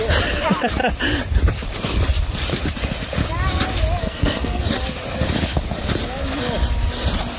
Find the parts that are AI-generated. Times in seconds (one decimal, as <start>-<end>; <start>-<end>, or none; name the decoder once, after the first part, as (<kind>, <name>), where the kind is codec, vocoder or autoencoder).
4.0-4.6 (codec, SNAC)